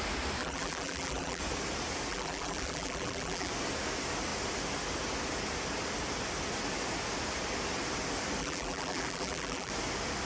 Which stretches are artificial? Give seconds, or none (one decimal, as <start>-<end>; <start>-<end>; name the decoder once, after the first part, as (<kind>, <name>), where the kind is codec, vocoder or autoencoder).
0.4-1.4 (vocoder, BigVGAN v2); 2.1-3.5; 8.4-9.7